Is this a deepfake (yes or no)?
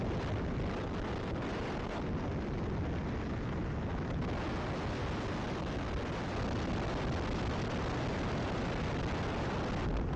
no